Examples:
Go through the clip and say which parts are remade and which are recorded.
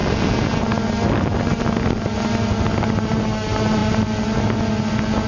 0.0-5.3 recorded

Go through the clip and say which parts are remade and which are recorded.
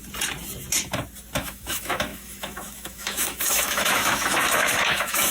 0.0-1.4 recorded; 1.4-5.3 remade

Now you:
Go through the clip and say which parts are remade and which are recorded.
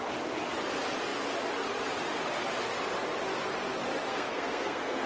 0.0-4.1 recorded; 4.1-5.1 remade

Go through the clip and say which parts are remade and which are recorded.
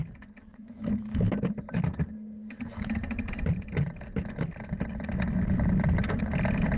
0.0-0.5 recorded; 0.5-1.4 remade; 1.4-6.8 recorded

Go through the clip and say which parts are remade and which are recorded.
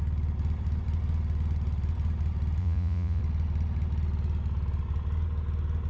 0.0-2.6 recorded; 2.6-3.2 remade; 3.2-5.9 recorded